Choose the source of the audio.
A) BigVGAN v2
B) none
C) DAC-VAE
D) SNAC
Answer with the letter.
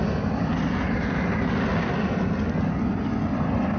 B